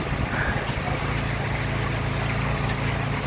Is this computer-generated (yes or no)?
no